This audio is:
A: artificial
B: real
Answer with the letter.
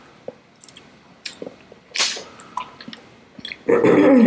B